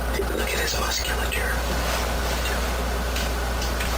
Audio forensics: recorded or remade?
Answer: remade